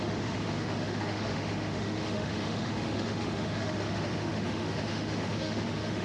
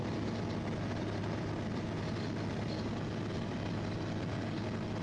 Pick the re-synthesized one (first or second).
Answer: first